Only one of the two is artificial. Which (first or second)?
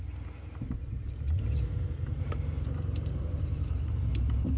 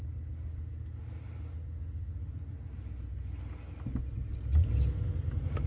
first